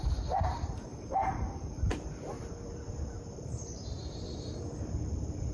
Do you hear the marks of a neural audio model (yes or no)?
yes